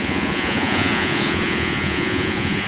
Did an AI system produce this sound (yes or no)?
yes